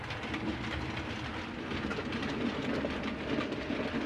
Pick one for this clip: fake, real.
real